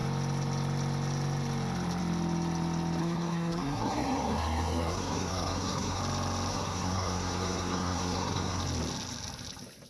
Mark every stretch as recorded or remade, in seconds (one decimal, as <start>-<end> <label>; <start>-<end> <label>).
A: 0.0-3.0 recorded; 3.0-6.0 remade; 6.0-6.5 recorded; 6.5-8.6 remade; 8.6-9.9 recorded